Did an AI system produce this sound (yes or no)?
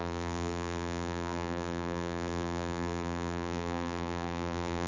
yes